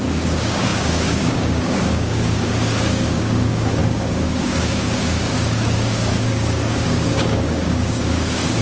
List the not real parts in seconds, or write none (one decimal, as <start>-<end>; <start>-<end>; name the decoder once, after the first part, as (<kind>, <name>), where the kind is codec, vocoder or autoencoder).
0.0-8.6 (codec, DAC)